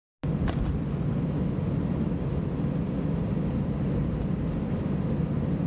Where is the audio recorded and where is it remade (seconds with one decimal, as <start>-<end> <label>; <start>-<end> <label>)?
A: 0.0-5.7 recorded